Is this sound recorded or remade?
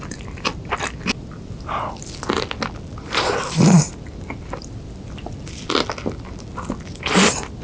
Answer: recorded